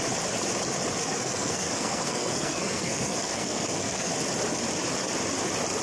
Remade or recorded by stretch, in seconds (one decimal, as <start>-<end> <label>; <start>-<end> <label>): 0.0-1.0 recorded; 1.0-4.1 remade; 4.1-5.8 recorded